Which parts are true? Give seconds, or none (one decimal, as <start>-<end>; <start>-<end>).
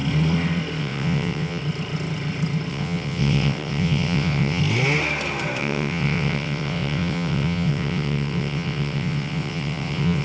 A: 0.0-0.8; 1.6-2.7; 4.6-5.6